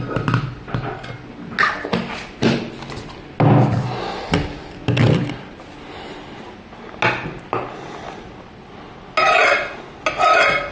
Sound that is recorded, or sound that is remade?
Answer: recorded